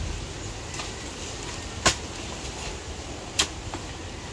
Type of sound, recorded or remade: recorded